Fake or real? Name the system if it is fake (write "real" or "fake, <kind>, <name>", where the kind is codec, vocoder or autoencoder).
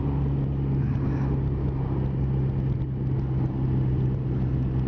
real